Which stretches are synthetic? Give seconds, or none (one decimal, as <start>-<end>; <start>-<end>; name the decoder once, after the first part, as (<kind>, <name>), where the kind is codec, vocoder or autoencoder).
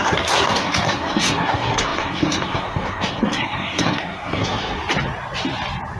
0.0-4.8 (codec, SNAC)